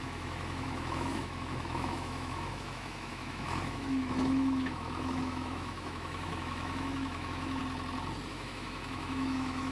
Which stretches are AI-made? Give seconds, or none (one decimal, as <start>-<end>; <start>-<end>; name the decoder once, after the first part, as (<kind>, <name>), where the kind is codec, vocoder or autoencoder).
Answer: 0.0-7.6 (autoencoder, DAC-VAE); 8.3-9.7